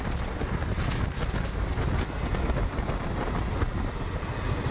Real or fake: real